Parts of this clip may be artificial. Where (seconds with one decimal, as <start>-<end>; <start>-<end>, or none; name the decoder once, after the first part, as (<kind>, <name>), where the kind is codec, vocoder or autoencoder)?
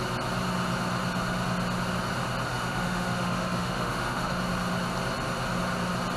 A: 2.5-4.4 (autoencoder, DAC-VAE)